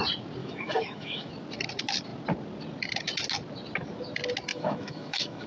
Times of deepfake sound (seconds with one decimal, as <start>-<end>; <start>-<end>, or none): 0.4-1.3; 4.5-5.5